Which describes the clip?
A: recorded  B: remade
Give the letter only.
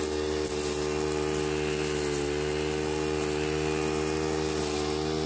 A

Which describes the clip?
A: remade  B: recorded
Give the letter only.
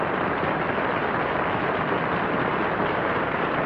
B